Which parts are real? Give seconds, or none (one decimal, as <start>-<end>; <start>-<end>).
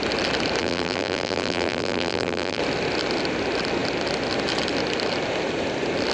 0.0-0.6; 2.6-6.1